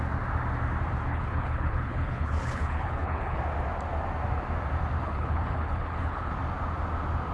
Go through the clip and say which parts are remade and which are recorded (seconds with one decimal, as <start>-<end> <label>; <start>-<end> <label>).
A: 0.0-1.1 recorded; 1.1-3.4 remade; 3.4-5.0 recorded; 5.0-6.3 remade; 6.3-7.3 recorded